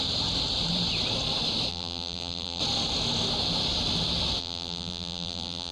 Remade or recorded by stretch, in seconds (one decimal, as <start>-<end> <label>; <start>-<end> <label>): 0.0-1.7 recorded; 1.7-2.6 remade; 2.6-4.4 recorded; 4.4-5.7 remade